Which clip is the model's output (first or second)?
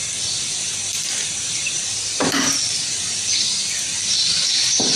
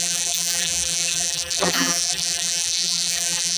second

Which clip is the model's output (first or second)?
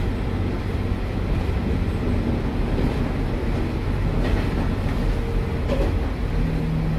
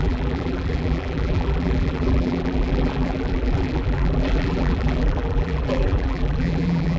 second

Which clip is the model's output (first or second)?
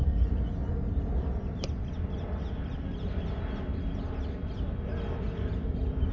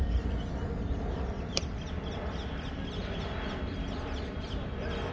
second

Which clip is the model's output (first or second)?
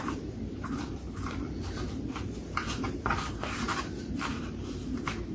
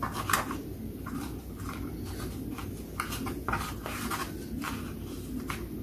first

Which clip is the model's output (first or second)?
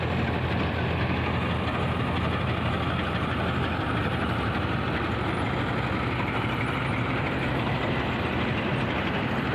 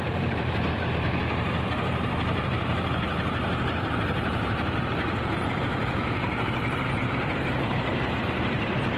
second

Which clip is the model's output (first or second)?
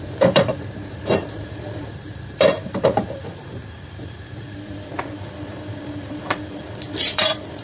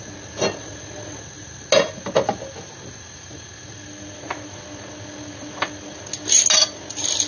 first